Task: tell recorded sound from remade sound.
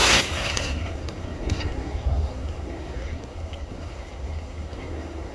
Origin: remade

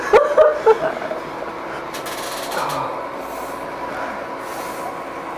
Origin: recorded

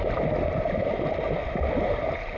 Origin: recorded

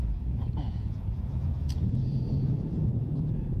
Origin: remade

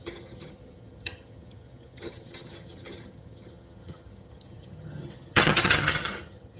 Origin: remade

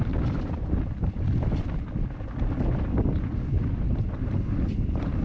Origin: recorded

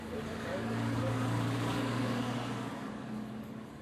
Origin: remade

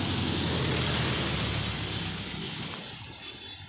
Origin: recorded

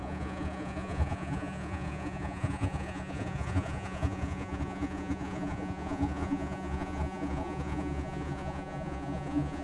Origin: remade